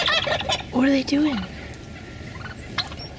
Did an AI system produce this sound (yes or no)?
no